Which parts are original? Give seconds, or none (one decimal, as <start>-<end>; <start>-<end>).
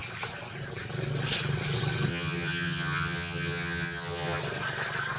0.0-2.1; 4.4-5.2